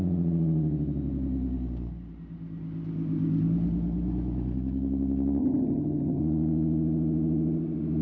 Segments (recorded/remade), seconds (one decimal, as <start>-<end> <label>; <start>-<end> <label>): 0.0-5.4 recorded; 5.4-6.2 remade; 6.2-8.0 recorded